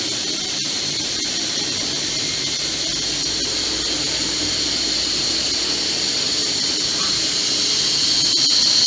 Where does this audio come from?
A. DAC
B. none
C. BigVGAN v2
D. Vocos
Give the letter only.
C